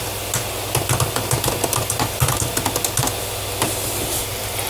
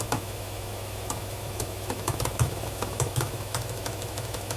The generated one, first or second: second